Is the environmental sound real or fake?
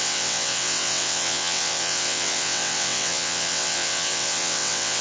fake